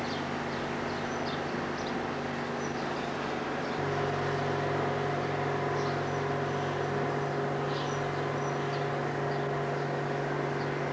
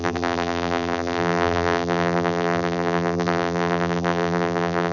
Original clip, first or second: first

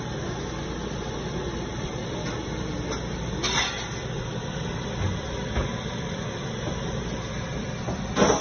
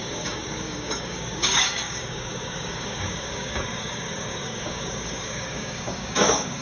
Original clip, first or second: first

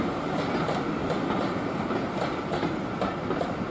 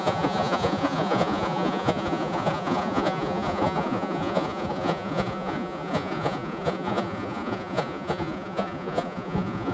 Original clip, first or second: first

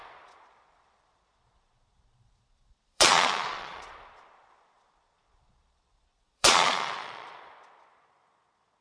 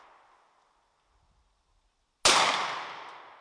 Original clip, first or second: second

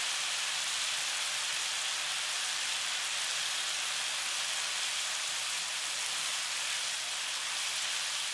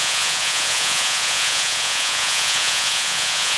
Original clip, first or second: first